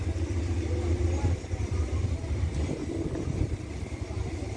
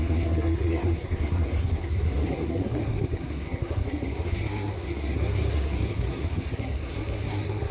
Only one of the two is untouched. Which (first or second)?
first